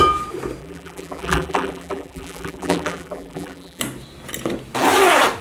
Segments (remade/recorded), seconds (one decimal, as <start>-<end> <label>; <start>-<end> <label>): 0.0-0.6 recorded; 0.6-3.8 remade; 3.8-5.4 recorded

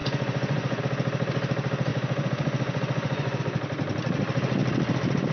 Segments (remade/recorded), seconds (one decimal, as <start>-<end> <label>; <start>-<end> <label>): 0.0-0.8 remade; 0.8-1.9 recorded; 1.9-3.4 remade; 3.4-5.3 recorded

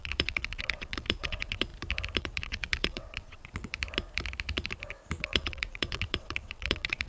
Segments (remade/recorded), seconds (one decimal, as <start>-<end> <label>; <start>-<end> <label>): 0.0-1.7 remade; 1.7-2.2 recorded; 2.2-3.8 remade; 3.8-5.2 recorded; 5.2-7.1 remade

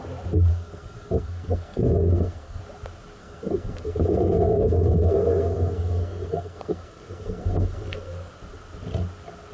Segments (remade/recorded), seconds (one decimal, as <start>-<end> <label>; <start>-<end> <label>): 0.0-0.5 recorded; 0.5-2.6 remade; 2.6-3.2 recorded; 3.2-8.3 remade; 8.3-9.5 recorded

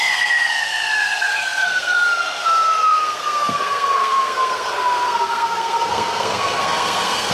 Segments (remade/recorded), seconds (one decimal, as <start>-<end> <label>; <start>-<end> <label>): 0.0-7.3 remade

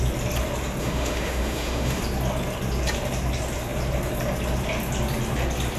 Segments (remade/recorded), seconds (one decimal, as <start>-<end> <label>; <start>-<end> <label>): 0.0-0.8 recorded; 0.8-2.0 remade; 2.0-5.8 recorded

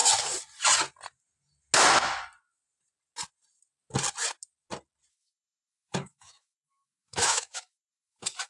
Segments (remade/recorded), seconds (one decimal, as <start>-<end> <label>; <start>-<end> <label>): 0.0-5.1 recorded; 5.1-8.5 remade